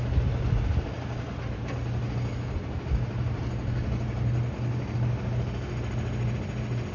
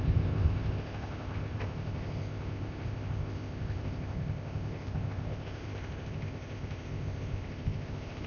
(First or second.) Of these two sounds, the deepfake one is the second